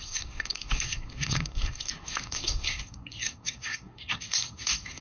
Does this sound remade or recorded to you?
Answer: remade